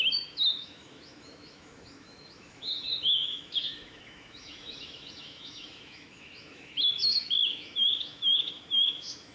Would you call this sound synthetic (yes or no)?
yes